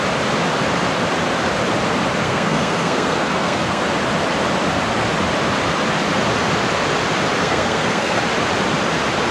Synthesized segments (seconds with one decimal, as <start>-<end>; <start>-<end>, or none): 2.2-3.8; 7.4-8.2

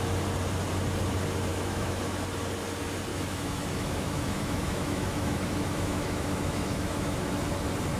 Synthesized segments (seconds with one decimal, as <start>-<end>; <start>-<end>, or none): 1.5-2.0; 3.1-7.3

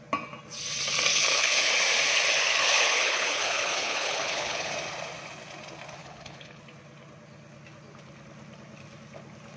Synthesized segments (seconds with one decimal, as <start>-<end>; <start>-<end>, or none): 1.1-1.7; 2.5-4.7; 6.0-6.6

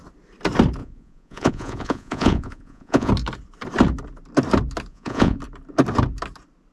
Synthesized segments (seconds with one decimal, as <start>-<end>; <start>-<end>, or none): 0.8-3.1; 4.9-5.4

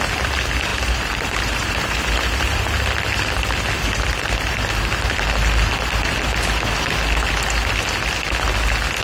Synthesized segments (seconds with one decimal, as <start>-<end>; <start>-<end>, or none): 0.7-2.0

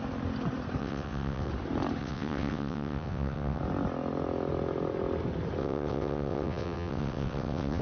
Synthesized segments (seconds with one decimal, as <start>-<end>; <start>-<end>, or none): 0.8-1.5; 2.0-3.6; 5.6-7.8